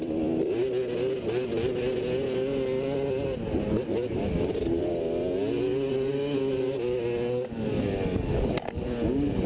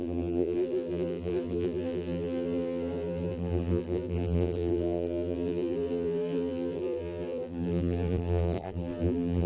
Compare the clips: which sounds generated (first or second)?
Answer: second